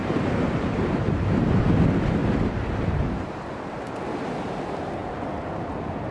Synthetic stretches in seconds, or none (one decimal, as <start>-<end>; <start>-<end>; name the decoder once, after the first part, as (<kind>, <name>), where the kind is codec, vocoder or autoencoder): 0.0-1.6 (vocoder, BigVGAN v2); 2.2-3.6